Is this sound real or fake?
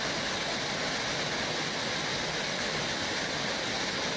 real